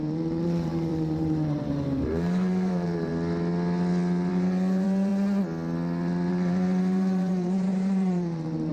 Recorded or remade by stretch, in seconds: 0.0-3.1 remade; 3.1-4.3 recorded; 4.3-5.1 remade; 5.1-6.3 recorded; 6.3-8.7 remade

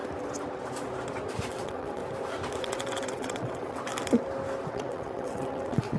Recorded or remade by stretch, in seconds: 0.0-1.5 recorded; 1.5-2.0 remade; 2.0-2.6 recorded; 2.6-3.9 remade; 3.9-4.7 recorded; 4.7-6.0 remade

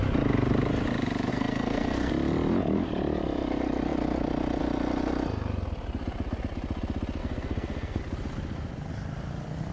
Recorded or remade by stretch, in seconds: 0.0-1.3 recorded; 1.3-2.1 remade; 2.1-7.2 recorded; 7.2-8.0 remade; 8.0-9.7 recorded

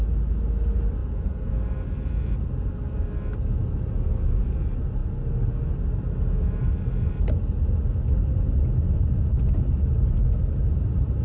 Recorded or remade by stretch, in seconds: 0.0-1.0 recorded; 1.0-1.5 remade; 1.5-11.2 recorded

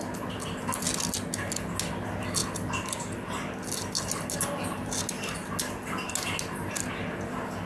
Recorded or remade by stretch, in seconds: 0.0-7.7 recorded

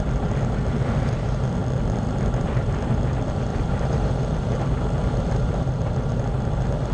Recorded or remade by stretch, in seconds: 0.0-1.6 recorded; 1.6-2.7 remade; 2.7-3.5 recorded; 3.5-4.1 remade; 4.1-6.9 recorded